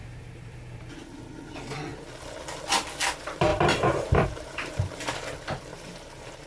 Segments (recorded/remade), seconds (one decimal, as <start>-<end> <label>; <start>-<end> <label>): 0.0-0.9 remade; 0.9-3.5 recorded; 3.5-5.0 remade; 5.0-5.7 recorded; 5.7-6.5 remade